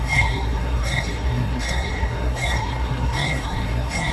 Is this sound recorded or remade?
remade